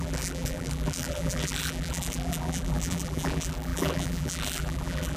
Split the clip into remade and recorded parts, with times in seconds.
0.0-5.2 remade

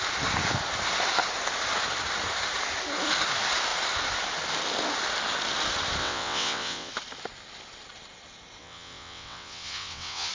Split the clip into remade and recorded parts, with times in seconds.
0.0-6.0 recorded; 6.0-6.9 remade; 6.9-8.6 recorded; 8.6-10.3 remade

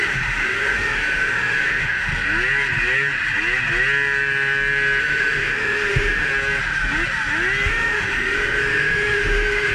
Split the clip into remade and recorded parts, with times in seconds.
0.0-2.1 remade; 2.1-5.0 recorded; 5.0-6.3 remade; 6.3-7.7 recorded; 7.7-9.7 remade

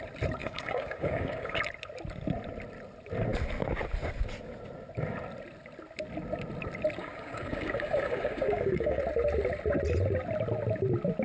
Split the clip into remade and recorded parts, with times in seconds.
0.0-0.4 recorded; 0.4-1.6 remade; 1.6-7.0 recorded; 7.0-9.0 remade; 9.0-11.2 recorded

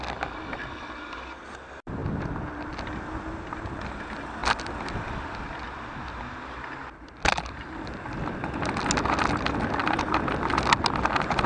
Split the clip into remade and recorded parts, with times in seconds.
0.0-2.0 recorded; 2.0-2.6 remade; 2.6-4.4 recorded; 4.4-6.2 remade; 6.2-9.8 recorded; 9.8-10.5 remade; 10.5-11.5 recorded

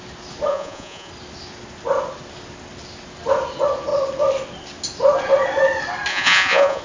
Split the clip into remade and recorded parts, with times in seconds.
0.0-0.5 recorded; 0.5-1.1 remade; 1.1-6.1 recorded; 6.1-6.8 remade